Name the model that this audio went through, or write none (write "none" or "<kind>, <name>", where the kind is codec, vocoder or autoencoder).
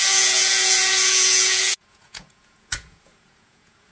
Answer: vocoder, Vocos